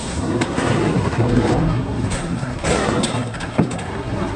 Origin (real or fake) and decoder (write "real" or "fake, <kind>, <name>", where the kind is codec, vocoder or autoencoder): fake, codec, SNAC